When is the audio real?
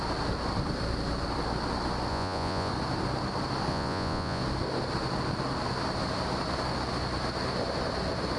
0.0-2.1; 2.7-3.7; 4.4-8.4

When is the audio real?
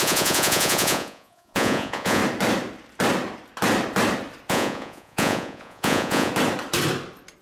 2.2-4.5; 6.3-7.4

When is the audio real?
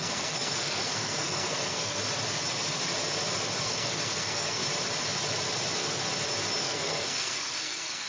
2.0-3.6; 4.6-6.6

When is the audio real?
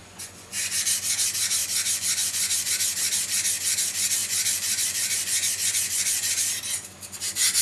0.8-1.6; 2.7-4.2; 6.3-7.6